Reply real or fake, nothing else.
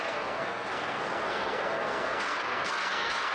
fake